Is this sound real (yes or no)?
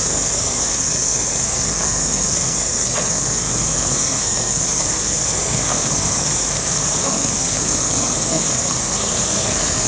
no